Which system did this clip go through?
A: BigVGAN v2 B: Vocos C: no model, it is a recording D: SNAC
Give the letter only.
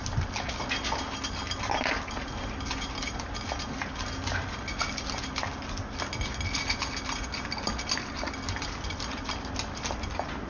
C